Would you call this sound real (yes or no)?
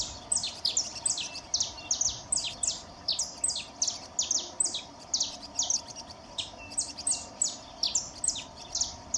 yes